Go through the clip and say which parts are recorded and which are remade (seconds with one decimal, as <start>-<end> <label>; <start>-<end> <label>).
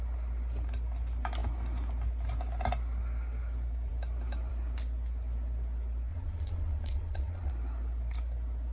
0.0-6.1 recorded; 6.1-7.5 remade; 7.5-8.7 recorded